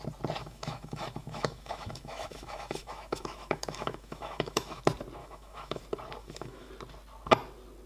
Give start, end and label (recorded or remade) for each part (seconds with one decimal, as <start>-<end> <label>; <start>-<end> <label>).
0.0-0.4 recorded; 0.4-4.8 remade; 4.8-5.2 recorded; 5.2-5.8 remade; 5.8-6.2 recorded; 6.2-6.7 remade; 6.7-7.9 recorded